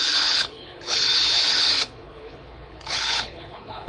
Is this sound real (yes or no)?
no